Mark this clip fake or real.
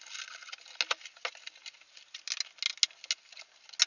real